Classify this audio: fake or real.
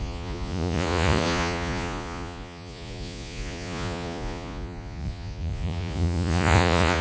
fake